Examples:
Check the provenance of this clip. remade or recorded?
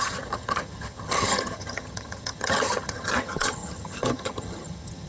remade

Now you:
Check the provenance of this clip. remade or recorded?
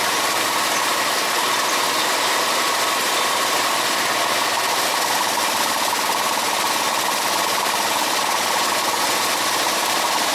remade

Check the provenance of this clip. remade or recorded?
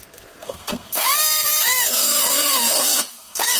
remade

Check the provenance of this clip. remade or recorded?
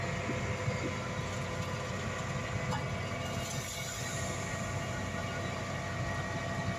recorded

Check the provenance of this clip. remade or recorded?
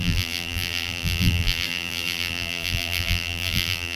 remade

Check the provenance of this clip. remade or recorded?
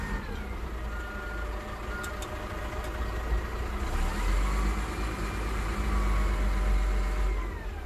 recorded